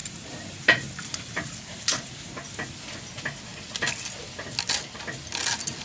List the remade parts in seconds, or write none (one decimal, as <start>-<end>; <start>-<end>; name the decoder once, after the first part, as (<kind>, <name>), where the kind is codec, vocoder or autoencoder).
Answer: 0.0-2.3 (vocoder, BigVGAN v2)

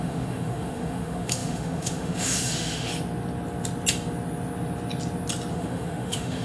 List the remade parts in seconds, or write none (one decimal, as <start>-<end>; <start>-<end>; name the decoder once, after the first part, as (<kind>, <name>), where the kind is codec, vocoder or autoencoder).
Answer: 0.0-2.9 (autoencoder, DAC-VAE); 5.5-6.4